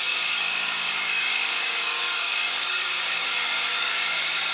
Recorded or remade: remade